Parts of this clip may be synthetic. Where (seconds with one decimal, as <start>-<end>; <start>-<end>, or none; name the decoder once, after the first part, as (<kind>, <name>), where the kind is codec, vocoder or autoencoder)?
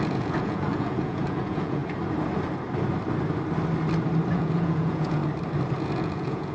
0.0-1.8 (vocoder, Vocos); 4.3-5.2; 5.8-6.5